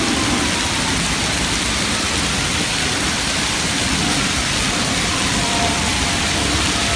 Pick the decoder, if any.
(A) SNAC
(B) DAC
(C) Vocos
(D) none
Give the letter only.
D